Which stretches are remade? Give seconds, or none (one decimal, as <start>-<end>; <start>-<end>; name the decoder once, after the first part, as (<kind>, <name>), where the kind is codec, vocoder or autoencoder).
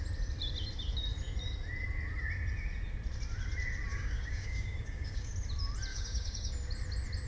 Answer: 3.9-5.3 (codec, DAC); 5.9-6.5